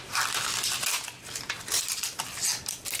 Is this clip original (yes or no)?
no